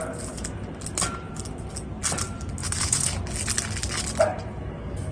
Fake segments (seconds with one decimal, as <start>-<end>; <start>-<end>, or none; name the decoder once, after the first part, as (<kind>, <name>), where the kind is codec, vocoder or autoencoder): 2.6-3.1 (autoencoder, DAC-VAE)